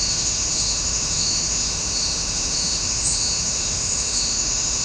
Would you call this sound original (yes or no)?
no